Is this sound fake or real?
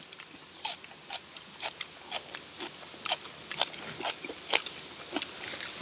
real